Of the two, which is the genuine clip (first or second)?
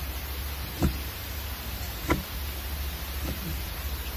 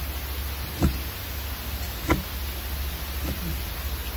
second